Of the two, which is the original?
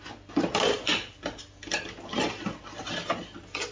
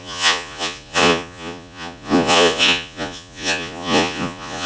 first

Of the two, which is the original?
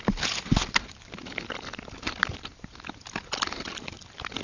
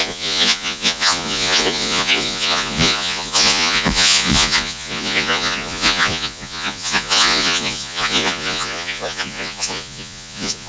first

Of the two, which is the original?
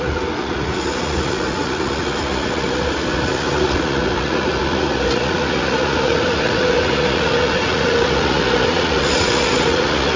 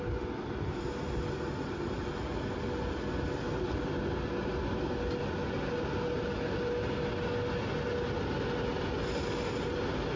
second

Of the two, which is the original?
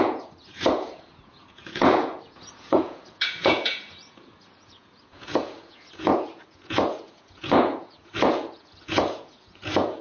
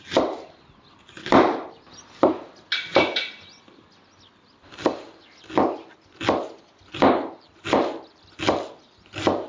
second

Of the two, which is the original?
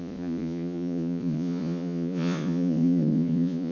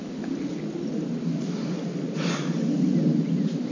second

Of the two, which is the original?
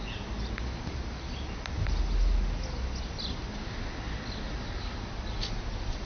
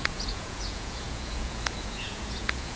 first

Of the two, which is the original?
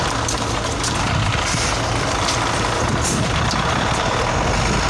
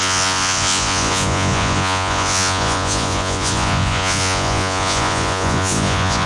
first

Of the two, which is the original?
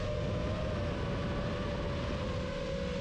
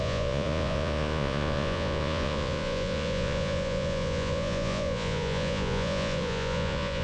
first